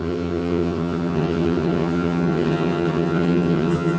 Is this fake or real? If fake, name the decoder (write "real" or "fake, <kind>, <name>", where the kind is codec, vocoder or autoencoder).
fake, vocoder, HiFi-GAN